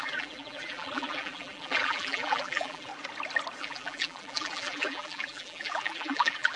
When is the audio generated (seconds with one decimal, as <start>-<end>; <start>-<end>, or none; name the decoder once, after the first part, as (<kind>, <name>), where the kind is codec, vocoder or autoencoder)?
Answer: 0.0-2.9 (vocoder, BigVGAN v2); 3.6-6.6